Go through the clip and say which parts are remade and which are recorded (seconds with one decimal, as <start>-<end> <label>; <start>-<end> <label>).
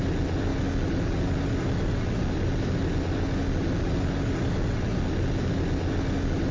0.0-6.5 recorded